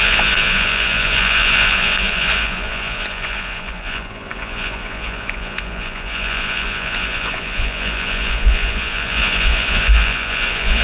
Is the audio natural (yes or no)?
no